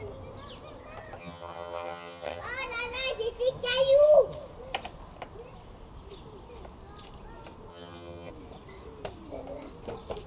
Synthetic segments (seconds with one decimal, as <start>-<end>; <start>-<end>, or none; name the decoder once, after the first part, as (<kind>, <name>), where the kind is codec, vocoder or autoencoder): 1.2-2.4 (vocoder, HiFi-GAN); 7.7-8.3